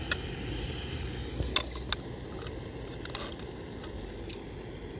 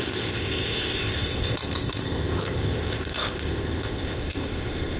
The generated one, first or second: second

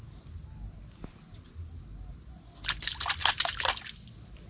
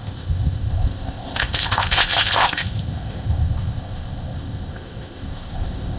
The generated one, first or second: second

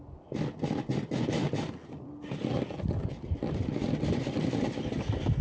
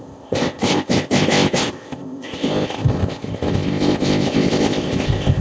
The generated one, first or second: second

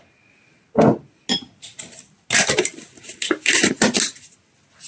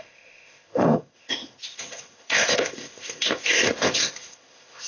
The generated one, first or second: second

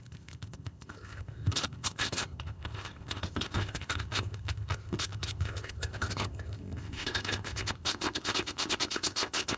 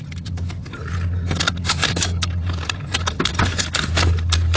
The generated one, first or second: first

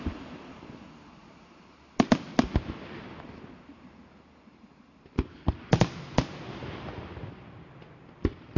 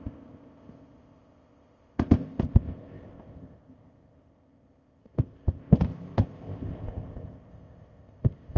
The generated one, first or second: second